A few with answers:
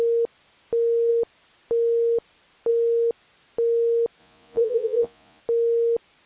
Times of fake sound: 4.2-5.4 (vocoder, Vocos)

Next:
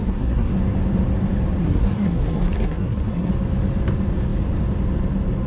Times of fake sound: 0.0-0.5 (codec, SNAC); 1.6-3.3

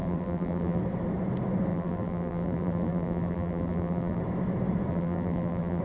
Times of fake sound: 0.0-0.8 (vocoder, BigVGAN v2); 1.7-4.2; 4.9-5.8

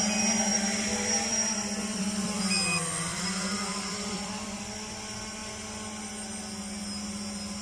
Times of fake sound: 0.5-2.4 (vocoder, BigVGAN v2); 3.1-4.9

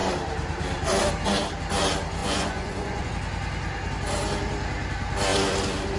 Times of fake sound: 2.2-3.1 (vocoder, Vocos)

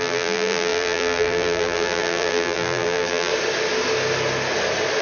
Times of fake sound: 0.0-3.3 (vocoder, BigVGAN v2)